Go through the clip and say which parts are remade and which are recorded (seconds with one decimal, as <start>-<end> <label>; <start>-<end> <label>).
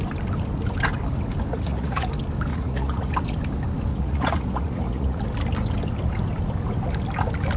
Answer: 0.0-1.5 recorded; 1.5-2.1 remade; 2.1-2.5 recorded; 2.5-3.1 remade; 3.1-3.9 recorded; 3.9-5.2 remade; 5.2-7.6 recorded